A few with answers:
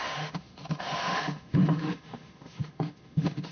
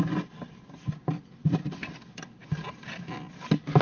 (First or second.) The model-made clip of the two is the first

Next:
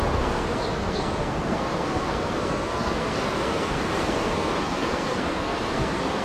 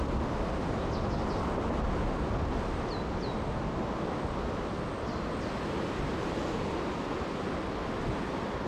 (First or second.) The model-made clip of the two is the first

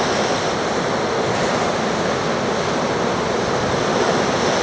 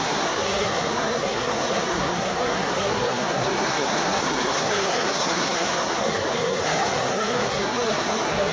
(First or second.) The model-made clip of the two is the second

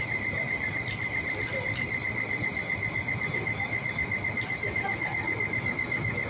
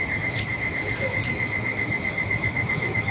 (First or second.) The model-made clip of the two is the second